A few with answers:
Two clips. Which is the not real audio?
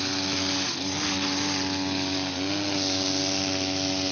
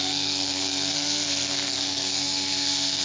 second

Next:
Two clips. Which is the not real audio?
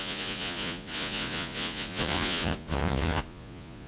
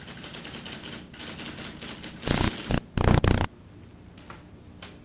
first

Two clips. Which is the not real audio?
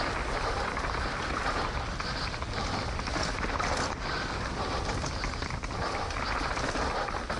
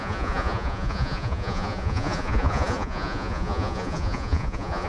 second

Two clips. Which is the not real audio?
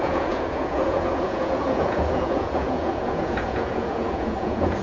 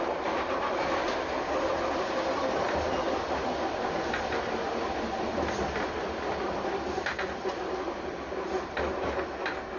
first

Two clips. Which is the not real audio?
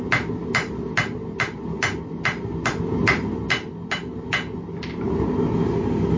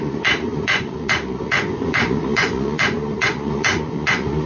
second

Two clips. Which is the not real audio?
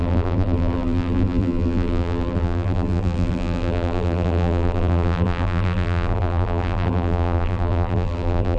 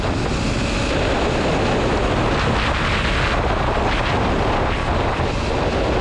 first